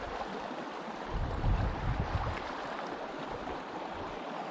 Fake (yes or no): no